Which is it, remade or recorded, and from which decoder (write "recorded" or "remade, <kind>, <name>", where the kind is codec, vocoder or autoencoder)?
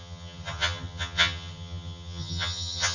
remade, vocoder, HiFi-GAN